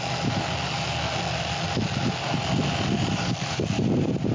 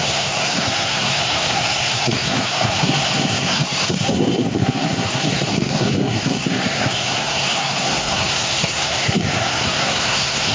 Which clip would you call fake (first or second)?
second